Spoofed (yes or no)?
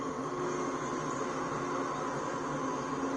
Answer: no